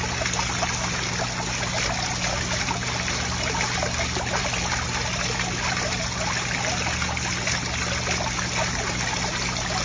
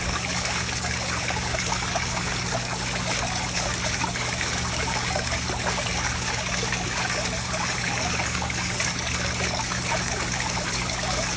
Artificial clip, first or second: second